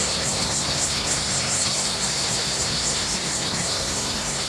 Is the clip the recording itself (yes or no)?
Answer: no